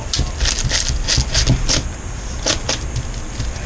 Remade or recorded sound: recorded